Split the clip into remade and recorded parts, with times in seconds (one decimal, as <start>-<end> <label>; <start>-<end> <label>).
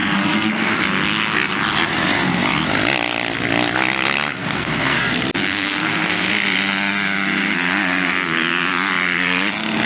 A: 0.0-0.8 remade; 0.8-4.4 recorded; 4.4-5.0 remade; 5.0-5.4 recorded; 5.4-6.3 remade; 6.3-9.9 recorded